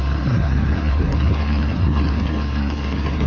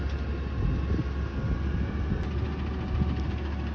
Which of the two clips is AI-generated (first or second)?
first